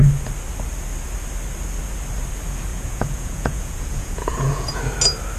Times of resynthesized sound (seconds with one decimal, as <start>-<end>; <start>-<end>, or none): 2.7-4.8